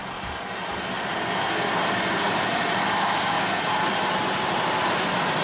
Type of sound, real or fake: real